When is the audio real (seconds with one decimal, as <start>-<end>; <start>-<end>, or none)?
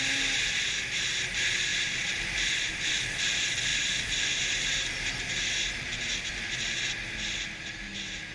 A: 0.0-1.7; 2.7-3.7; 6.3-8.3